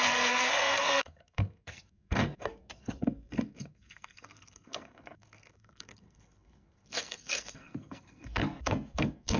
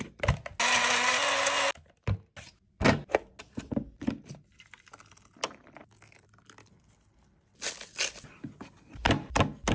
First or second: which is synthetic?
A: first